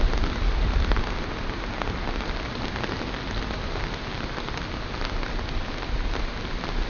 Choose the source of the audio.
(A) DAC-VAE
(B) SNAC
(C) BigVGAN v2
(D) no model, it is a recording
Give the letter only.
D